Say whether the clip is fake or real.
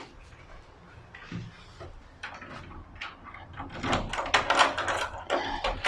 real